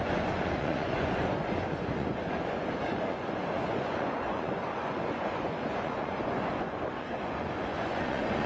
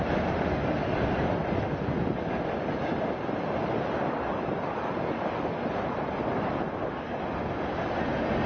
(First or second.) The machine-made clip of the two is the first